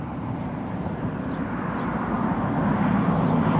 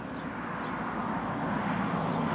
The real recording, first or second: second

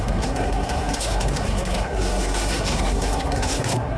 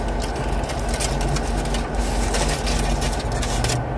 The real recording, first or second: second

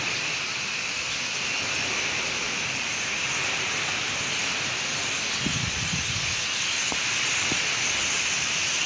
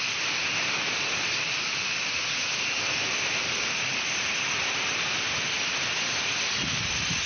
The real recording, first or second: first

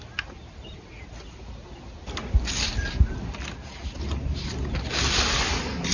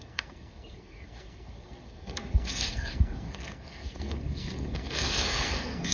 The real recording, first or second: first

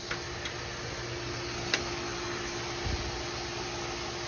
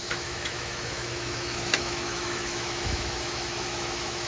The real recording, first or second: first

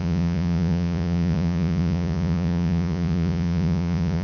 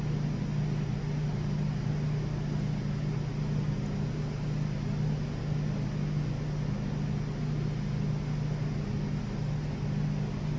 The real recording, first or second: second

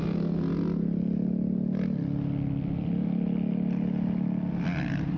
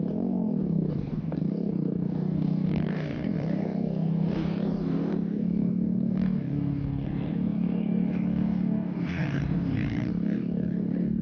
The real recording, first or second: first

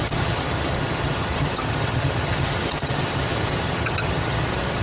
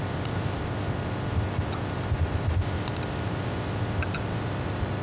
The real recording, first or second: second